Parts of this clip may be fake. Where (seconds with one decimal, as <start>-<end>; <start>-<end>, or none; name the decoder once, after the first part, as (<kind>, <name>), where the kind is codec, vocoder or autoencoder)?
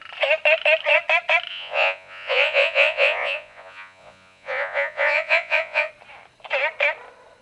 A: 1.5-5.9 (vocoder, Vocos)